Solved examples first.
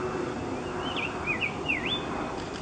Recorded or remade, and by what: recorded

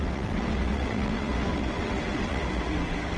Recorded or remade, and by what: remade, vocoder, WaveNeXt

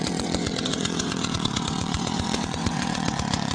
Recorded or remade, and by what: remade, vocoder, WaveNeXt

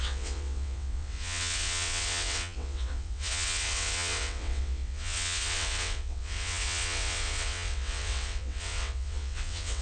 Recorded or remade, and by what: remade, vocoder, WaveNeXt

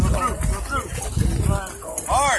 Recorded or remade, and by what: recorded